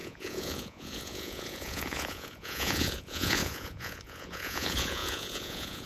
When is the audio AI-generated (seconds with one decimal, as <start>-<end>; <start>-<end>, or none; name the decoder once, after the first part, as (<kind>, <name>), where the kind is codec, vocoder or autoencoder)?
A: 0.0-5.9 (vocoder, Vocos)